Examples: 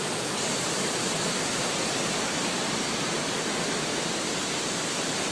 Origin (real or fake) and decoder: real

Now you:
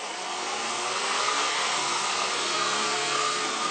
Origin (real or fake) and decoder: fake, codec, SNAC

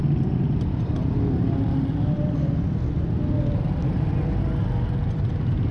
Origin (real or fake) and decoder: real